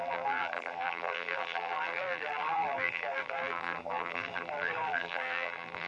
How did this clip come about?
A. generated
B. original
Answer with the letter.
A